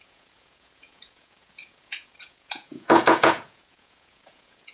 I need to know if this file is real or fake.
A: fake